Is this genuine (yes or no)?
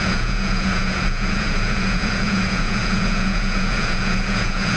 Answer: no